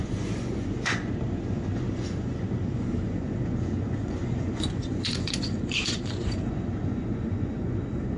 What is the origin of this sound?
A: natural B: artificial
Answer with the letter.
B